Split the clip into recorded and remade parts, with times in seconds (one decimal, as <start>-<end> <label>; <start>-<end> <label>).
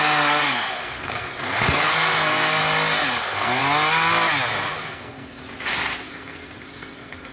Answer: 0.0-2.6 remade; 2.6-3.2 recorded; 3.2-3.6 remade; 3.6-4.8 recorded; 4.8-5.4 remade; 5.4-6.0 recorded; 6.0-7.3 remade